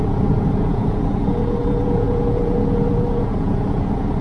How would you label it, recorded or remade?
remade